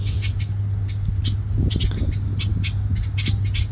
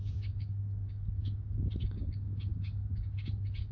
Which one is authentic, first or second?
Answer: first